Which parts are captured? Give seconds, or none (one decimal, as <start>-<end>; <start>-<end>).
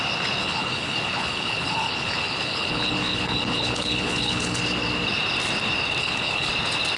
0.0-0.4; 4.6-6.0; 6.5-7.0